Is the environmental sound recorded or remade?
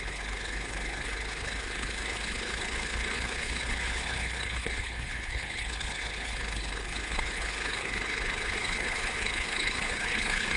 remade